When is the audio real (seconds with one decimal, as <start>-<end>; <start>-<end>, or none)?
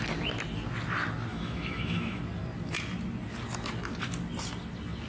0.0-1.3; 2.2-5.1